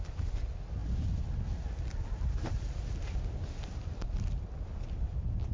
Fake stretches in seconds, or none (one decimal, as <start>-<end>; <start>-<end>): none